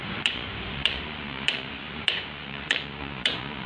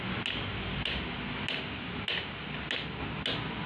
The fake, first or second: first